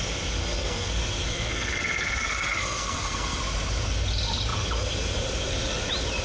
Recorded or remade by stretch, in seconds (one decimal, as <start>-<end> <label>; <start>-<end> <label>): 0.0-0.4 recorded; 0.4-0.9 remade; 0.9-1.3 recorded; 1.3-3.4 remade; 3.4-6.2 recorded